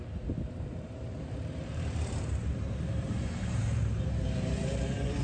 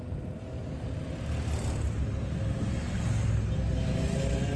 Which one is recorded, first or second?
second